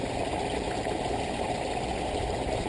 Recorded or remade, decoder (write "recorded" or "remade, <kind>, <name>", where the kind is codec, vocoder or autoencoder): recorded